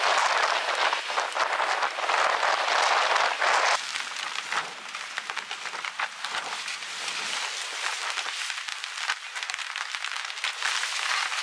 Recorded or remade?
recorded